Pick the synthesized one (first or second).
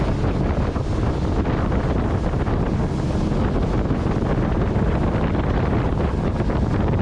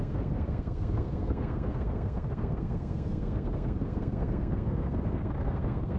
second